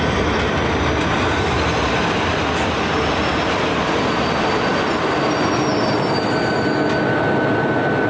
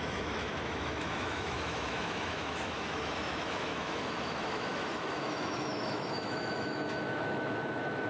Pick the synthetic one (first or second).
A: second